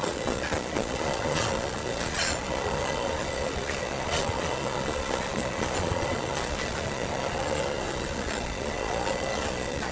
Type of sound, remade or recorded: remade